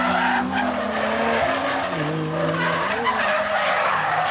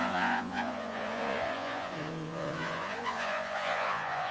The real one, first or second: first